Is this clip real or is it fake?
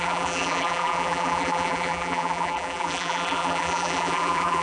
fake